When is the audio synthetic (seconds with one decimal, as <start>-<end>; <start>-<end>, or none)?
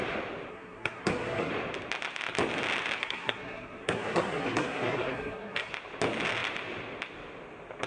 0.5-1.5; 3.0-5.7